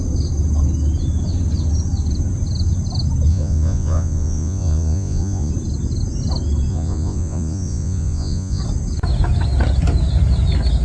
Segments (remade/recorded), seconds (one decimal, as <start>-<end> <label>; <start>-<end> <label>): 0.0-3.3 recorded; 3.3-5.5 remade; 5.5-6.7 recorded; 6.7-8.6 remade; 8.6-10.8 recorded

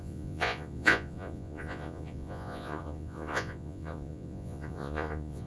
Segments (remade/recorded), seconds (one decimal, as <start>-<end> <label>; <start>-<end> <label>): 0.0-5.5 remade

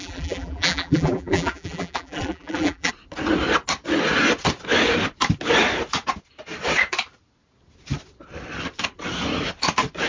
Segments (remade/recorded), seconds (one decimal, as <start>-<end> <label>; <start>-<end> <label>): 0.0-2.9 remade; 2.9-10.1 recorded

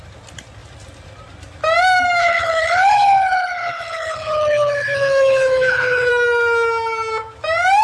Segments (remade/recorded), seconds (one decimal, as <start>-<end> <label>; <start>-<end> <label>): 0.0-2.2 recorded; 2.2-6.1 remade; 6.1-7.8 recorded

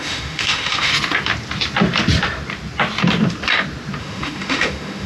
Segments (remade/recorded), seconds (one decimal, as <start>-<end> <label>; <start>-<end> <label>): 0.0-0.9 remade; 0.9-4.0 recorded; 4.0-5.1 remade

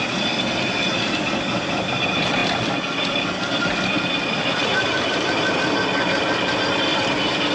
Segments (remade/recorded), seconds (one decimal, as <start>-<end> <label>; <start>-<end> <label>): 0.0-4.6 recorded; 4.6-5.3 remade; 5.3-6.9 recorded; 6.9-7.5 remade

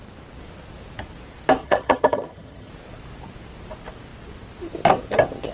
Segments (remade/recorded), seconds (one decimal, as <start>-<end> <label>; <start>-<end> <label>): 0.0-1.6 recorded; 1.6-2.7 remade; 2.7-5.5 recorded

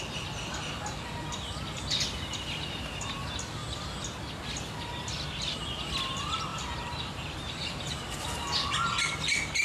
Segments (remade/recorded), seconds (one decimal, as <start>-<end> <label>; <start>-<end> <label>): 0.0-6.5 recorded; 6.5-7.7 remade; 7.7-9.6 recorded